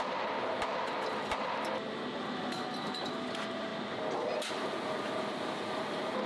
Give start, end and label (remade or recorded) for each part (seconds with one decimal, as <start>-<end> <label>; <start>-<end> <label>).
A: 0.0-6.3 recorded